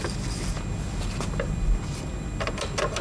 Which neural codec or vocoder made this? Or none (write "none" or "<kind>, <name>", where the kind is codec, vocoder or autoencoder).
none